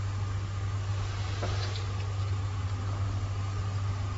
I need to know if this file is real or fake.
real